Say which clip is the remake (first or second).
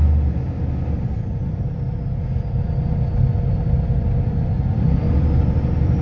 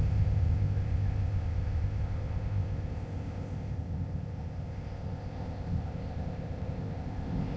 second